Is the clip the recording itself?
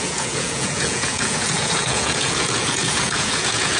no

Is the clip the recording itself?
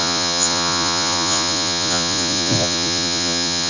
no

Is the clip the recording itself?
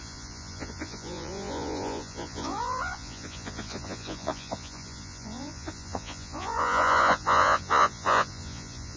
no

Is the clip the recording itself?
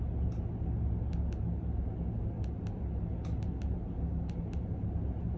yes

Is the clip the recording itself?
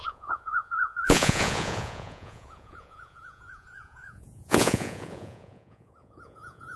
no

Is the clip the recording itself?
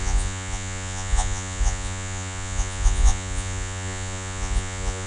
no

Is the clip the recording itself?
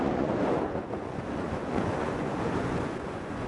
no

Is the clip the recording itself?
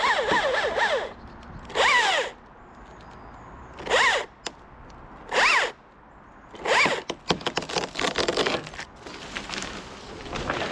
yes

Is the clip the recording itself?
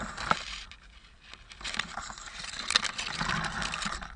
yes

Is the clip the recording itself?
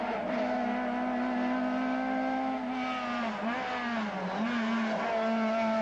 yes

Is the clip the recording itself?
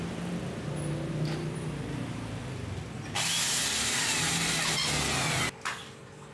yes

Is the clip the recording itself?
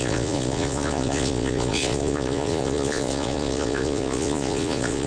no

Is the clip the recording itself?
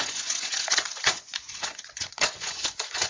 no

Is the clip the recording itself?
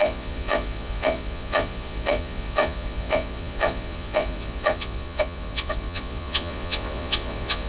no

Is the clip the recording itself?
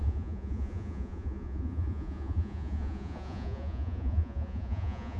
no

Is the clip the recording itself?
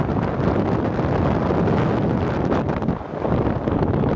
yes